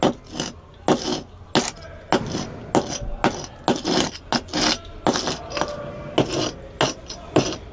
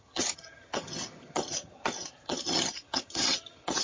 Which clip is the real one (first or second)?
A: first